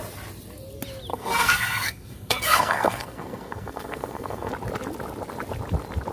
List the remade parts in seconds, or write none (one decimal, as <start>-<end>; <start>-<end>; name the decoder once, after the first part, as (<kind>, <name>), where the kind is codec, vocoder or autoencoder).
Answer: 1.1-4.5 (codec, SNAC)